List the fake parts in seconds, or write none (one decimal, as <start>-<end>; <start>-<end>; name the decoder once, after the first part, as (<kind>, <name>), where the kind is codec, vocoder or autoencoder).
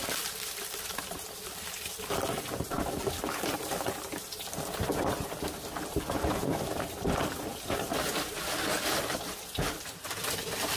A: 0.0-4.2 (vocoder, BigVGAN v2); 5.0-7.5; 9.5-10.8